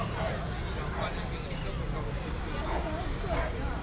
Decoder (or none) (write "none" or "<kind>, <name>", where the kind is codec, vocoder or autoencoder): none